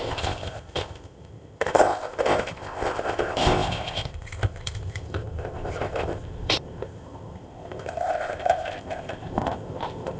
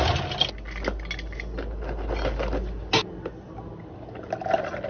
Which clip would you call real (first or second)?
second